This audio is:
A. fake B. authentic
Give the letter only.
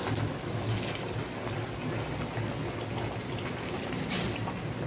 B